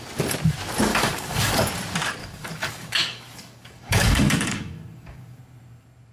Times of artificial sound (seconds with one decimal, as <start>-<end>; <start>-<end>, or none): 0.9-1.7; 2.2-5.4